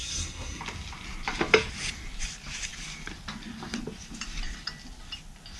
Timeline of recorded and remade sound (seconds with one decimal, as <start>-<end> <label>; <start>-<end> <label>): 0.0-0.6 remade; 0.6-5.6 recorded